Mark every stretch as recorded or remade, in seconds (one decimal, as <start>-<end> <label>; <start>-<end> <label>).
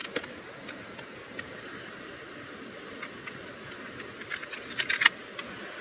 0.0-5.8 recorded